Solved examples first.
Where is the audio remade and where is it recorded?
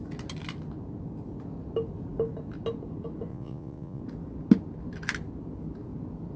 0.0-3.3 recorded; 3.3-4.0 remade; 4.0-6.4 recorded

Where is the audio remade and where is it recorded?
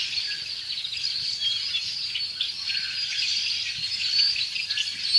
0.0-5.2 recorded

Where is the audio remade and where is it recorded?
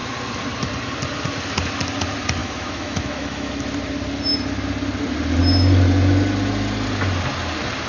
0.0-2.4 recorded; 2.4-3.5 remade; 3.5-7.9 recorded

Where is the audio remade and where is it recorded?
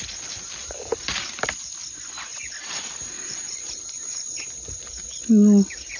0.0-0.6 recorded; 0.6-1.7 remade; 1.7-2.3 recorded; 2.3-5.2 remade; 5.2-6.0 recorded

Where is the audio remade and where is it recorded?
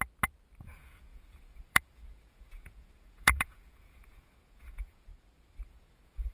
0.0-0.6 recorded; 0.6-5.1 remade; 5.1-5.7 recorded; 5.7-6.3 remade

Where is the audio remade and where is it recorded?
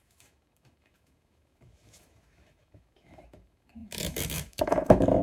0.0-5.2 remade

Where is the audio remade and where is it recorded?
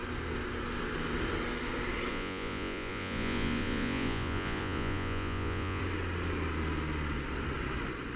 0.0-2.1 recorded; 2.1-5.8 remade; 5.8-8.2 recorded